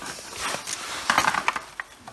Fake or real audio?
real